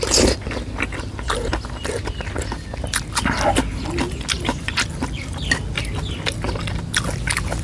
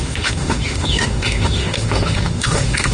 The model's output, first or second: second